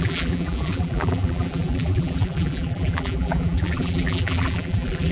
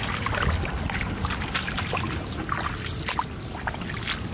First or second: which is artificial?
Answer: first